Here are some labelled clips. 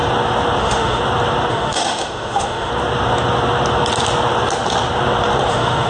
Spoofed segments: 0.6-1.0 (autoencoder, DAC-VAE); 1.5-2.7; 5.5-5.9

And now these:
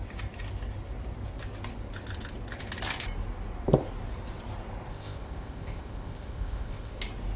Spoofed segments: 4.9-7.0 (codec, ZipCodec)

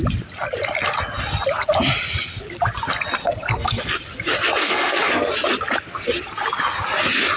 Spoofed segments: 3.2-4.0 (codec, SNAC); 4.6-5.3